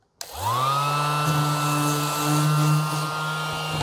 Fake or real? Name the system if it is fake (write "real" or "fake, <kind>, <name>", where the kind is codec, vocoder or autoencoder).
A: real